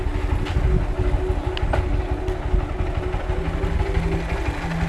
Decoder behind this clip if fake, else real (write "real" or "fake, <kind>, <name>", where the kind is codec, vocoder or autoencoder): real